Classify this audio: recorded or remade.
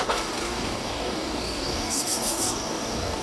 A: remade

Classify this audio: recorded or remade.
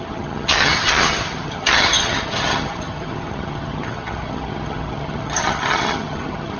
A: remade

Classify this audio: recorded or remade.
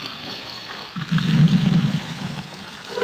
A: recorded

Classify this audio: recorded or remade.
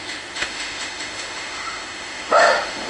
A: remade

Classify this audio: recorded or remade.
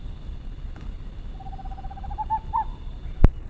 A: recorded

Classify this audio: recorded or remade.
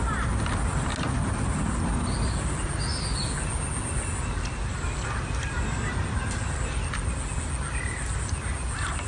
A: recorded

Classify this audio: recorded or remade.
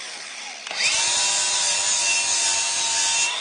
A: recorded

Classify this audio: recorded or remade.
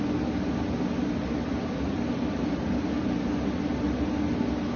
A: recorded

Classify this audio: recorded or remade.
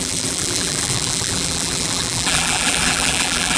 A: remade